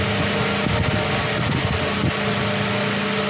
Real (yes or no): yes